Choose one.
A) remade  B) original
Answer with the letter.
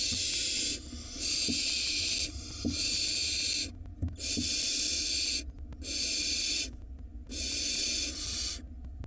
B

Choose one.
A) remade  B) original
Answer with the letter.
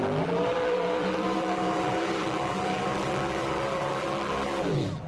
A